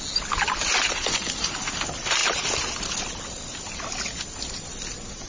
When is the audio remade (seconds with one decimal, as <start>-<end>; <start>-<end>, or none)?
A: none